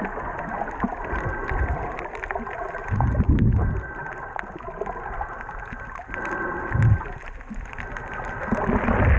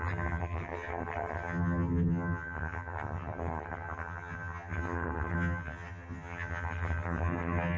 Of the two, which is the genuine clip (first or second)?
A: first